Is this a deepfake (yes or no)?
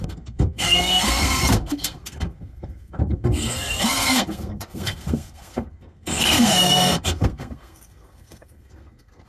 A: yes